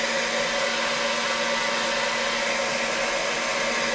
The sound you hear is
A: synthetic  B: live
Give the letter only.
B